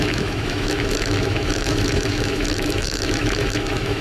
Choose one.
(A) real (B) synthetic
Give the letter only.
B